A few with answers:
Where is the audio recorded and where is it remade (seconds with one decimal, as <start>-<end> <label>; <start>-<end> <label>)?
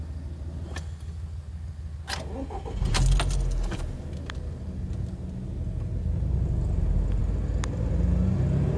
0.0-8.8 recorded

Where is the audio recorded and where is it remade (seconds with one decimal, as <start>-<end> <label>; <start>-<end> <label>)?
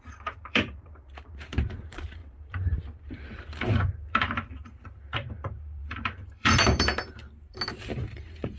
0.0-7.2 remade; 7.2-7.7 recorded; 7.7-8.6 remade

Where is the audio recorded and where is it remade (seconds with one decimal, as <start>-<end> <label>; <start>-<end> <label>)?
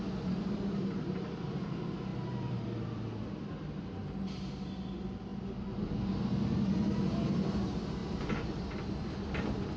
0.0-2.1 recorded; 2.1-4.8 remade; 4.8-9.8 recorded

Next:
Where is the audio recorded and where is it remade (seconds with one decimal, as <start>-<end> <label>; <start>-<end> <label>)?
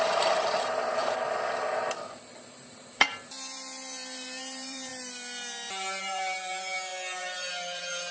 0.0-1.0 remade; 1.0-3.3 recorded; 3.3-4.9 remade; 4.9-6.0 recorded; 6.0-8.1 remade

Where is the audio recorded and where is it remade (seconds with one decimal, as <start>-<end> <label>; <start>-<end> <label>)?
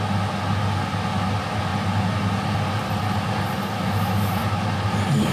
0.0-5.3 recorded